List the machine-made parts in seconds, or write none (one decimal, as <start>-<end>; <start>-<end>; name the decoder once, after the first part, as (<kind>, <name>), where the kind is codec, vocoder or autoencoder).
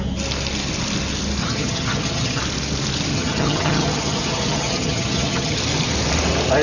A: 1.4-2.4 (vocoder, HiFi-GAN); 3.1-5.6